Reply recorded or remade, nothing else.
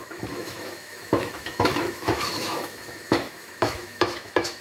remade